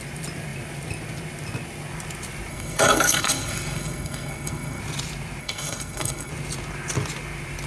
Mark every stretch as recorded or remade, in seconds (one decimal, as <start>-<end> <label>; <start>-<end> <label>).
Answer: 0.0-2.5 recorded; 2.5-4.8 remade; 4.8-5.4 recorded; 5.4-6.3 remade; 6.3-7.7 recorded